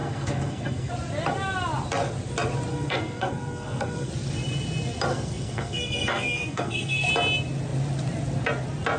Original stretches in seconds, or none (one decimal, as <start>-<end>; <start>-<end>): 0.9-2.7; 4.1-5.1; 7.1-9.0